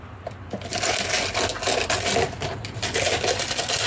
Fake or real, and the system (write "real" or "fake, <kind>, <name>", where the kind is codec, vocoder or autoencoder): real